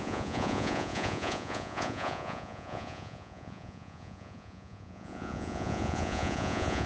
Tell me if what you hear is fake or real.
fake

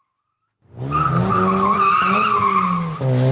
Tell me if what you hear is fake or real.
real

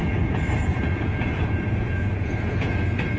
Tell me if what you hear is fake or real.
fake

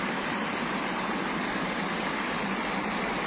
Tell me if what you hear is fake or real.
real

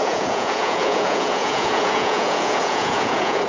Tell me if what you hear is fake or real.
fake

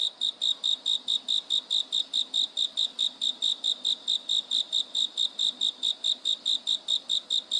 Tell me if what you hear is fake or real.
real